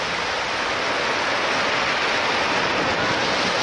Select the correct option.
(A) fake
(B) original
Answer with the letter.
B